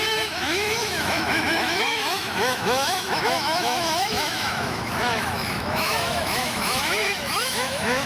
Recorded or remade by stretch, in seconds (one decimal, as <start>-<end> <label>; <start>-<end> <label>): 0.0-8.1 remade